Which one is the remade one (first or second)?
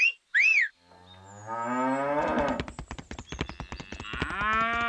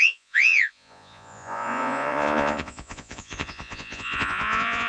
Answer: second